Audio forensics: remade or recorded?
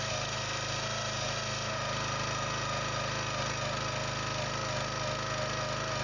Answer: recorded